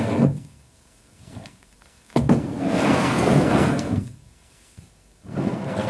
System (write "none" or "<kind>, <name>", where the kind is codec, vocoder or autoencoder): codec, SNAC